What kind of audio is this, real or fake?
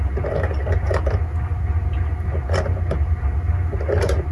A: real